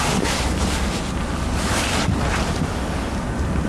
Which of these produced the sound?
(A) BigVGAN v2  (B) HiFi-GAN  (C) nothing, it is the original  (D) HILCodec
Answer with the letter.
C